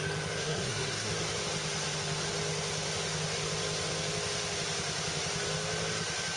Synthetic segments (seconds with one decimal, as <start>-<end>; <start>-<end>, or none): 0.4-1.1